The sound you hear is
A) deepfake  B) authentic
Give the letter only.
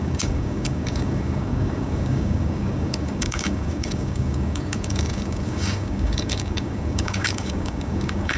A